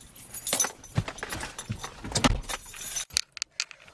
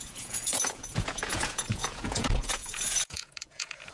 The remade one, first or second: second